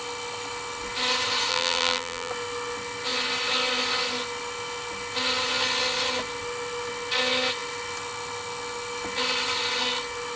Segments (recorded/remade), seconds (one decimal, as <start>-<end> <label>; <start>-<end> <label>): 0.0-1.5 recorded; 1.5-2.3 remade; 2.3-10.4 recorded